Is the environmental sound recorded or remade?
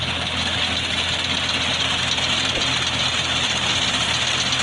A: recorded